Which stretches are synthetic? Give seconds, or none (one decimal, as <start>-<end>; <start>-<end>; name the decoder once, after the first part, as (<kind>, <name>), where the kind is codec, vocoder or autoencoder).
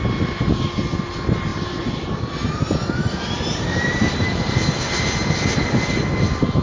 1.5-4.7 (vocoder, BigVGAN v2)